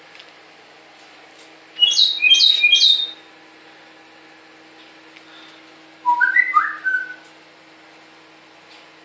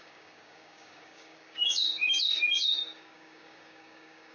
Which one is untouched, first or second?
first